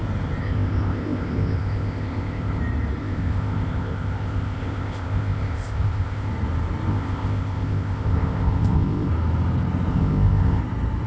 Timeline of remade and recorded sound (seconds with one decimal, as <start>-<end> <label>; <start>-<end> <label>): 0.0-0.4 recorded; 0.4-2.6 remade; 2.6-3.0 recorded; 3.0-6.3 remade; 6.3-6.9 recorded; 6.9-9.1 remade; 9.1-9.9 recorded; 9.9-10.6 remade; 10.6-11.1 recorded